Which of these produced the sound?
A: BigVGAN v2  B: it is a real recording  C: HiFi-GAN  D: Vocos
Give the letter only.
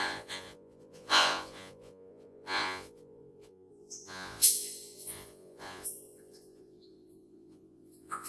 D